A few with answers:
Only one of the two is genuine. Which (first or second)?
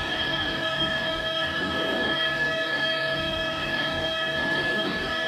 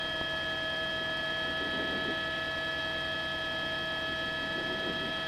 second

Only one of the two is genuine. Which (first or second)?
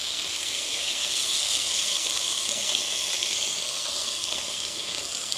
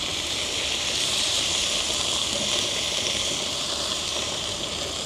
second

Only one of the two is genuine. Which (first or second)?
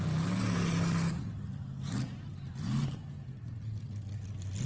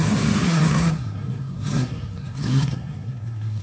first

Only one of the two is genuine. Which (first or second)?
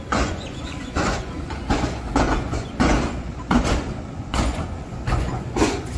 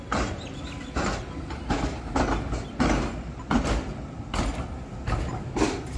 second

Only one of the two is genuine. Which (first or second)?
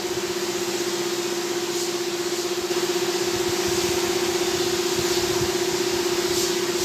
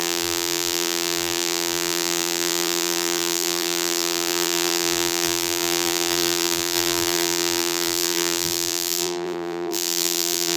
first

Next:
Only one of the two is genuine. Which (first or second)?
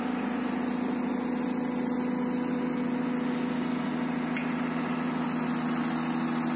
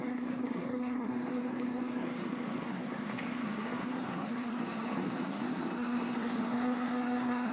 first